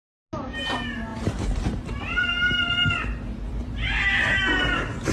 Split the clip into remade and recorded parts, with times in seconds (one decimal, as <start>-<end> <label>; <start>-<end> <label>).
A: 0.0-1.1 recorded; 1.1-2.6 remade; 2.6-3.6 recorded; 3.6-4.4 remade; 4.4-5.1 recorded